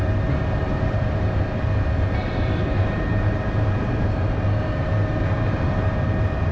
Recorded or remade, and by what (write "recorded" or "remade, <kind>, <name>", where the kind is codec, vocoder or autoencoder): remade, vocoder, BigVGAN v2